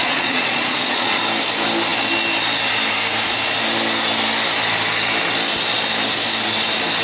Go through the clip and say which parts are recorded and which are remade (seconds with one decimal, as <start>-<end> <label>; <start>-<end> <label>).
0.0-1.2 remade; 1.2-7.0 recorded

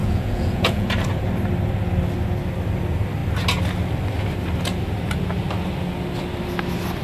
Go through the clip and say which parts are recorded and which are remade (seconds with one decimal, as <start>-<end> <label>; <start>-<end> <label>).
0.0-0.9 remade; 0.9-7.0 recorded

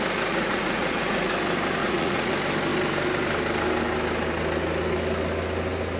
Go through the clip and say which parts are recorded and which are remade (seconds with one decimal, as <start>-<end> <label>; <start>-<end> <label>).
0.0-0.4 recorded; 0.4-1.3 remade; 1.3-1.8 recorded; 1.8-2.3 remade; 2.3-6.0 recorded

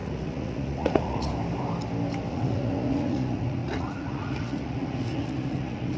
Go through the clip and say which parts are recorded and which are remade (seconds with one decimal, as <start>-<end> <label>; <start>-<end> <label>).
0.0-1.3 remade; 1.3-2.3 recorded; 2.3-6.0 remade